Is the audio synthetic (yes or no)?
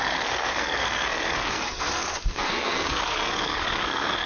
yes